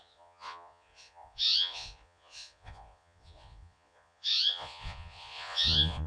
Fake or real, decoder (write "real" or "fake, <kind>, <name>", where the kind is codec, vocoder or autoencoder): fake, vocoder, Vocos